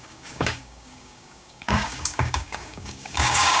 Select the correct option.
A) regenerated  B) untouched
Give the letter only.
A